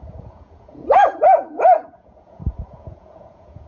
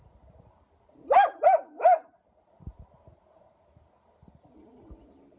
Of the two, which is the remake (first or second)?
first